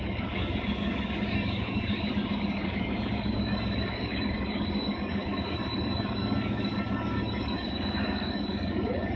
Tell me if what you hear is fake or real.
fake